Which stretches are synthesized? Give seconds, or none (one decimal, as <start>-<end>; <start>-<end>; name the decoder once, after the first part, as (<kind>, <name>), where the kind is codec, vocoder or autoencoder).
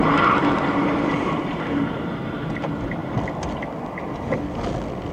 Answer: 0.7-3.0 (vocoder, BigVGAN v2)